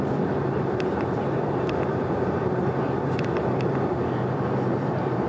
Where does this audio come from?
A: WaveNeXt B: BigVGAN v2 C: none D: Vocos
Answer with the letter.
B